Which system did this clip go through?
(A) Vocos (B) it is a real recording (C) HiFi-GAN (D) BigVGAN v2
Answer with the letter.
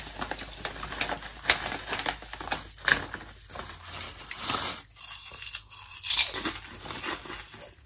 B